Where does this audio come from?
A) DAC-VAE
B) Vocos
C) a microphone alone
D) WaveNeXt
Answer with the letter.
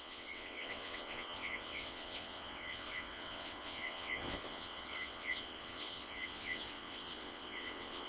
D